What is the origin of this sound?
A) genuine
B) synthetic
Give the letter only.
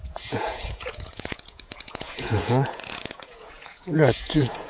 B